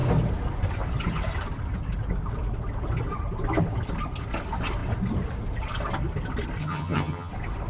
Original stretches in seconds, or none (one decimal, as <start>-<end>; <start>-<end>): 0.0-6.6; 7.3-7.7